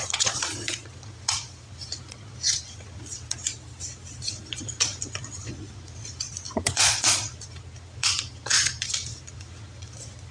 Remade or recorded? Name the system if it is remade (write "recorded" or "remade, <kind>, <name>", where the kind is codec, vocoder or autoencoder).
remade, vocoder, Vocos